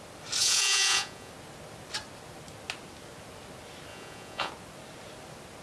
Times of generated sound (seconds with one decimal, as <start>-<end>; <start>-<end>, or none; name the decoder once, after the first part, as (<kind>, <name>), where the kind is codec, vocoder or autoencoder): 0.4-1.3 (vocoder, Vocos); 3.9-4.5